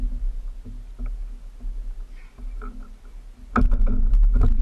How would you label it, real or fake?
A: real